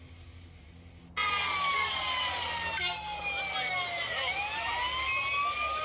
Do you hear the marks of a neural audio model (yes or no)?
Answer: no